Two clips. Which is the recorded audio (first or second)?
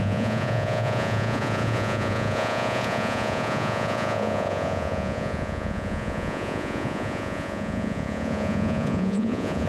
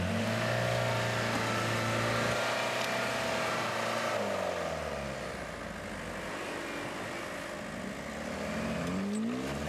second